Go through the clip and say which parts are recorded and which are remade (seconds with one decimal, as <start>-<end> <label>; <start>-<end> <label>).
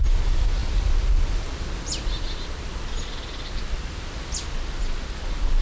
0.0-5.6 recorded